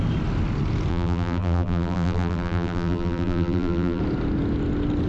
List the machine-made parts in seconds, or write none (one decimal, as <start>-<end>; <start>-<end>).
0.9-4.0